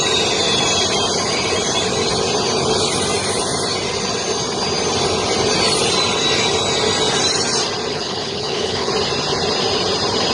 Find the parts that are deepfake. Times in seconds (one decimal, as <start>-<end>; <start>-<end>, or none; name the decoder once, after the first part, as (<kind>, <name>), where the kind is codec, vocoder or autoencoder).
7.9-8.9 (codec, HILCodec)